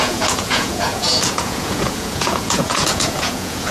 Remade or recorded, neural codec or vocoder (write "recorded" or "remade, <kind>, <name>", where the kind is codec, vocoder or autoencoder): remade, vocoder, Vocos